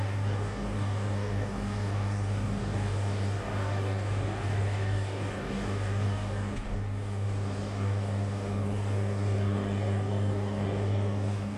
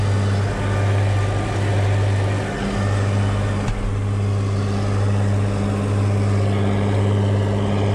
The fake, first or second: first